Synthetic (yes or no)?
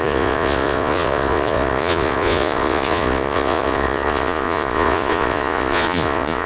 yes